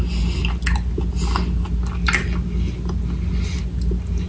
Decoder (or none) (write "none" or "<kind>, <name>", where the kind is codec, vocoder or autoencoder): none